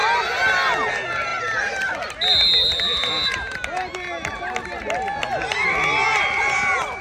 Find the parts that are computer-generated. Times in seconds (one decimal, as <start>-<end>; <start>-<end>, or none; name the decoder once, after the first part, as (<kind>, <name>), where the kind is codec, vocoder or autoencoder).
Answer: none